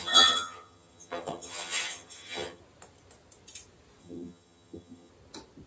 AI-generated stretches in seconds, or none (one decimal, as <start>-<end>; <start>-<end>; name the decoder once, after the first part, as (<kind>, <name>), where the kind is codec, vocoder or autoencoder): 0.0-2.6 (vocoder, HiFi-GAN); 4.0-5.1